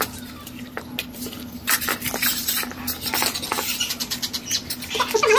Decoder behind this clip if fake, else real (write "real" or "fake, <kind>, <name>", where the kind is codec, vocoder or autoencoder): real